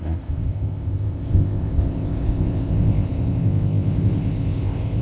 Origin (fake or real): fake